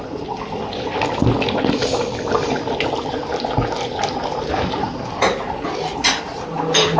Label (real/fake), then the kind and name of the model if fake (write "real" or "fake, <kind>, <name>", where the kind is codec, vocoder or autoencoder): real